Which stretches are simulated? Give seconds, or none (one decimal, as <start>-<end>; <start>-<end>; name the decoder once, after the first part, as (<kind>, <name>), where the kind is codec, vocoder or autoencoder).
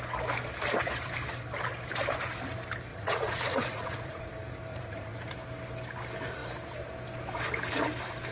2.9-4.3 (vocoder, Vocos); 4.7-5.3